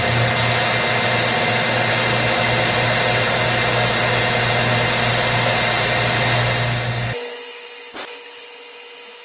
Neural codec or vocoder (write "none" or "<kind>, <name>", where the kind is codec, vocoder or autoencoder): none